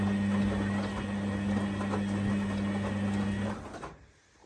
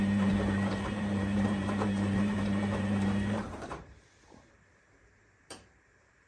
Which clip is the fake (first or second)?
second